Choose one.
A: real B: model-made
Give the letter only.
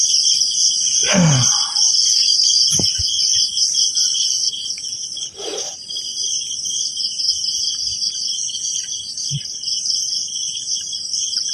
B